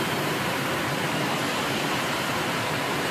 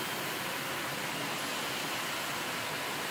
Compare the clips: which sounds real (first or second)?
second